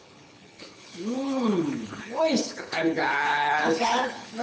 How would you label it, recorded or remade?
remade